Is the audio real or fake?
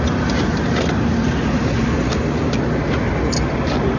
real